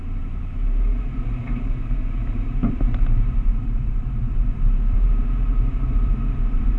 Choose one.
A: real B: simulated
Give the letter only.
B